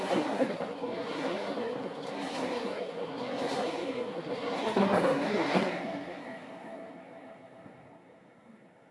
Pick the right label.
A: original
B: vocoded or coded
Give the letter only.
B